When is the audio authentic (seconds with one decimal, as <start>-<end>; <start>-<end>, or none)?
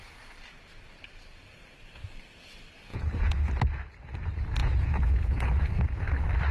0.0-2.9; 3.5-4.6; 5.8-6.5